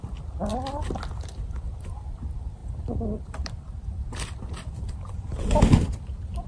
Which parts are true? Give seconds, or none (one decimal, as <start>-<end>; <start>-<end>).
0.0-2.6; 5.3-6.5